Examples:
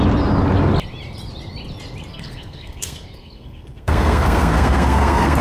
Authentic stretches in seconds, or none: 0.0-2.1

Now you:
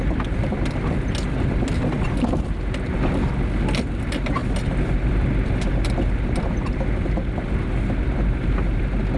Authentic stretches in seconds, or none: 0.0-9.2

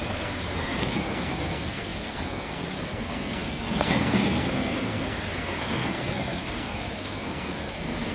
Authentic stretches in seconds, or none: none

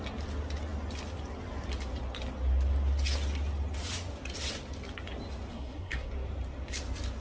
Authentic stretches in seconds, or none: 0.0-5.5; 6.1-7.2

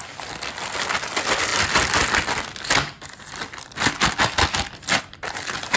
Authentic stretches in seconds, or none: 0.0-5.8

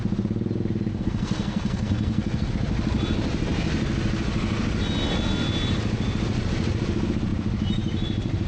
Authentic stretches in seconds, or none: 0.0-0.9; 2.5-8.5

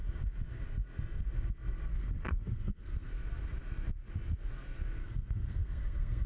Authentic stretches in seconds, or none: 0.0-1.9; 3.1-5.0